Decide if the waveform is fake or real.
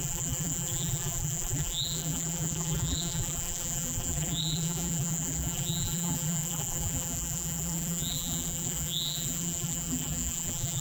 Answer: fake